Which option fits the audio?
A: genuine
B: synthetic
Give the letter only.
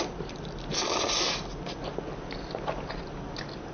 A